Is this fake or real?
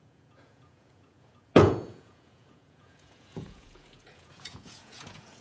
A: fake